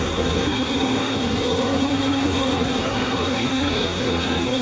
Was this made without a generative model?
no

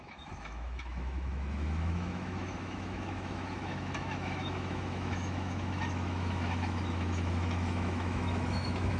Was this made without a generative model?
no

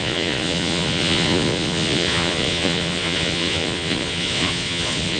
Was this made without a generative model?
no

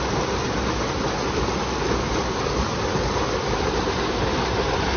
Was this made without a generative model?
yes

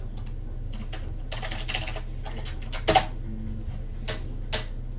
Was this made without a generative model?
yes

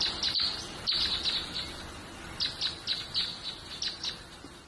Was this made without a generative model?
yes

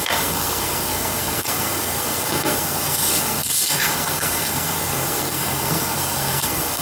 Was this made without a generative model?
no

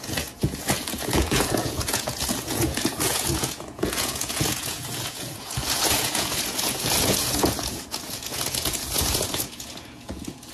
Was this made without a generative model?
no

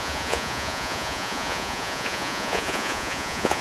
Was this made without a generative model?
no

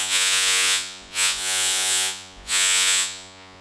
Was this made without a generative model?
no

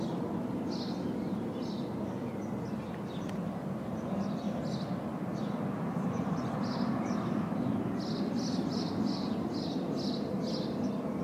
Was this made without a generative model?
yes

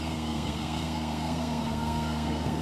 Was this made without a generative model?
no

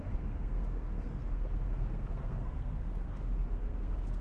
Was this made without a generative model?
no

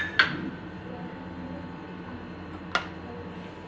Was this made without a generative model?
yes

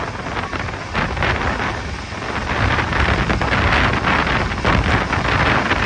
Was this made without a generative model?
yes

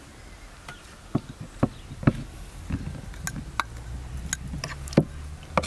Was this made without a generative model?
yes